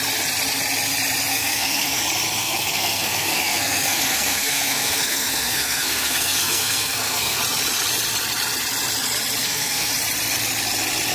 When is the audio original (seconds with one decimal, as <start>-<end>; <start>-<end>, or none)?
0.0-1.3; 2.0-2.4; 7.4-9.4; 9.9-11.1